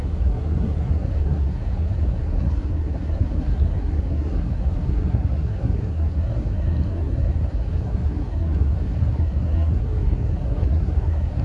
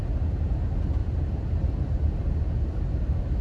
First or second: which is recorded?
second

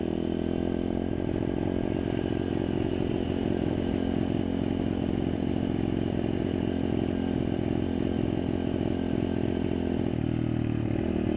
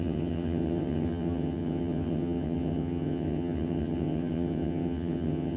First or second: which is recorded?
first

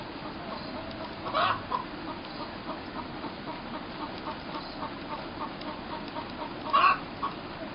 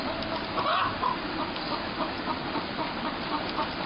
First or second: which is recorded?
first